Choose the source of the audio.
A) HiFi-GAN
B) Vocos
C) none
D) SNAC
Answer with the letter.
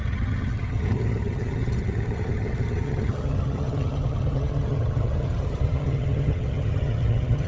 A